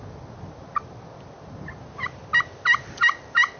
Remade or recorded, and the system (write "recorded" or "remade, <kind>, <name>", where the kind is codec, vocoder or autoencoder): recorded